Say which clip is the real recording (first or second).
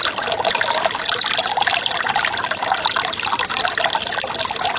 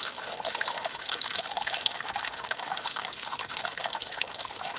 first